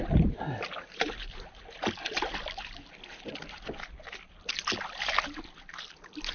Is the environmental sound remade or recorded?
recorded